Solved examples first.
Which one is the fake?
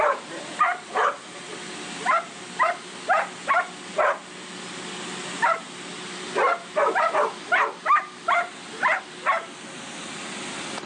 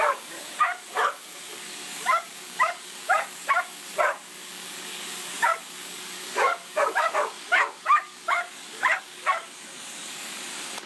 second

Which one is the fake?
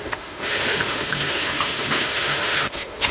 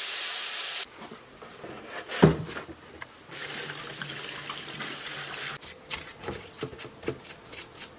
first